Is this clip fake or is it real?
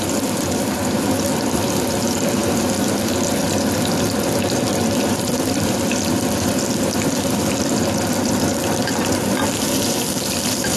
fake